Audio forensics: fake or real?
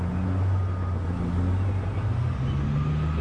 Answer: real